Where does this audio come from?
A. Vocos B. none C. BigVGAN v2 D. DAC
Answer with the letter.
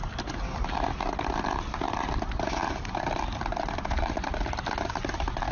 B